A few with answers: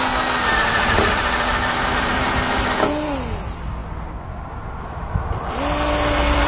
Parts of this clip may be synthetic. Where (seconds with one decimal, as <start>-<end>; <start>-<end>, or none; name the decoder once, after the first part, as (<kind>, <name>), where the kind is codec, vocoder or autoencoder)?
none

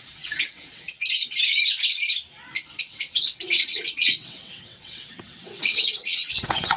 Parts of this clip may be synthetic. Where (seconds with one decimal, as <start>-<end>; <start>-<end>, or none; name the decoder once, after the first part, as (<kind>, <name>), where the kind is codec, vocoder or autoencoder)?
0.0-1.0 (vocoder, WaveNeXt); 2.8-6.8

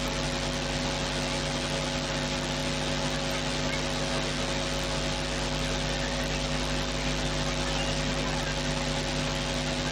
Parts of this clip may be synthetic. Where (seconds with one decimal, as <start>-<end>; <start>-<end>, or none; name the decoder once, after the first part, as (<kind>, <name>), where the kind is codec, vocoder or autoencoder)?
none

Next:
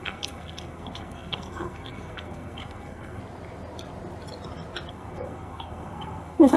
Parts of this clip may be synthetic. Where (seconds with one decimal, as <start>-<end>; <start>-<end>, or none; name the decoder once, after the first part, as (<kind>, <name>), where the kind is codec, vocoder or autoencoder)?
0.0-3.2 (codec, SNAC); 4.9-6.6

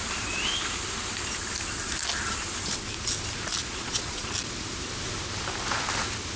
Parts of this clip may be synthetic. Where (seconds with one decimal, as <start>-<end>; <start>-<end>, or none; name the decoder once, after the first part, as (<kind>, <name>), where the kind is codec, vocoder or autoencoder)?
3.6-4.3 (vocoder, Vocos)